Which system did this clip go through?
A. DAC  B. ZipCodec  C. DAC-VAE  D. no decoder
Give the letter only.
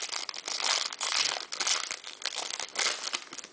D